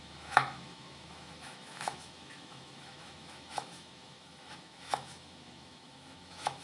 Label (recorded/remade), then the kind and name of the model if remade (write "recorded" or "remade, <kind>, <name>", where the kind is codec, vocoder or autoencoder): remade, autoencoder, DAC-VAE